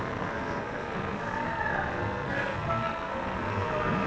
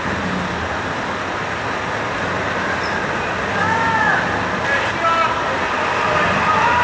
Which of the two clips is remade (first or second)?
first